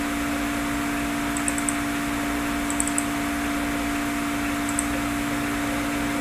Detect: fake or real real